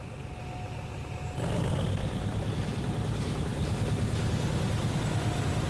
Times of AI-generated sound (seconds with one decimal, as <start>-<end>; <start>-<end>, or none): none